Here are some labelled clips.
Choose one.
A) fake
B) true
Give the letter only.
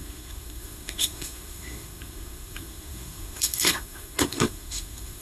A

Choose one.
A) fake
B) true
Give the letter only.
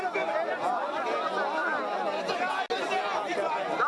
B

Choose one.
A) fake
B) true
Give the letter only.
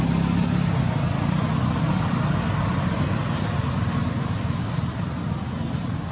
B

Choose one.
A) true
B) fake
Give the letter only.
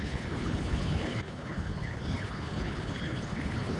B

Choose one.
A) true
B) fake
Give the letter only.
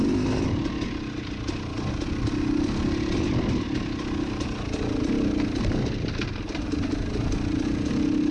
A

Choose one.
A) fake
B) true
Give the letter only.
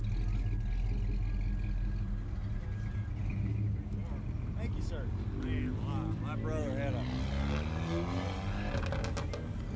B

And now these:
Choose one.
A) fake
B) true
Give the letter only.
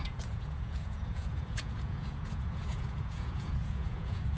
A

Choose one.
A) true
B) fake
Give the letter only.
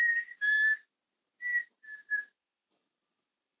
A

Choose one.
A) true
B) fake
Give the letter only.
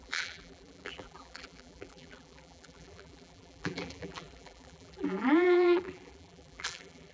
B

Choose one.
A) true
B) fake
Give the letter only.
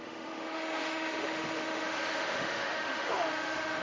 B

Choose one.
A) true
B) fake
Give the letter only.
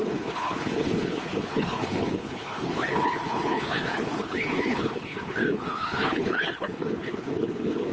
B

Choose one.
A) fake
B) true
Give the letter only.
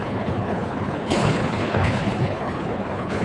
A